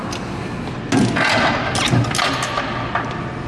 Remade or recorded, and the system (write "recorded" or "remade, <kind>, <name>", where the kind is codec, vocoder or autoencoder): recorded